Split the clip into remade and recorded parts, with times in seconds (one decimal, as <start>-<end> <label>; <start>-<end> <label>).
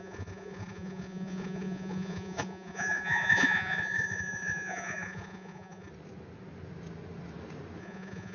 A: 0.0-5.9 remade; 5.9-7.8 recorded; 7.8-8.3 remade